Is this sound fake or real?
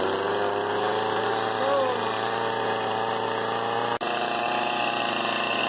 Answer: real